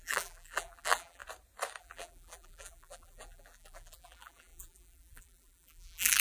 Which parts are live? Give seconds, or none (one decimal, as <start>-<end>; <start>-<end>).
1.2-1.8